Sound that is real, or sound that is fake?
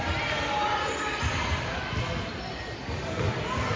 real